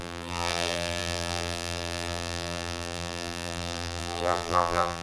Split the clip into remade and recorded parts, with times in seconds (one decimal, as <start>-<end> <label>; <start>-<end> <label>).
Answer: 0.0-5.0 remade